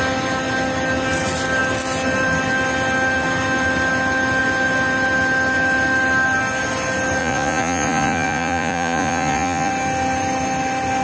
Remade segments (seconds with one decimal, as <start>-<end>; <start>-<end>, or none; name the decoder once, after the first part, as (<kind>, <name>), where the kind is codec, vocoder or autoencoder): 7.2-9.7 (vocoder, Vocos)